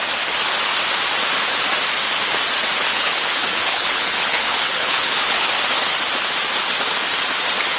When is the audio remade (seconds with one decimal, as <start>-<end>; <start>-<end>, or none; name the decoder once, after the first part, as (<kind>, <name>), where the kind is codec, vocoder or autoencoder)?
2.8-5.5 (codec, HILCodec)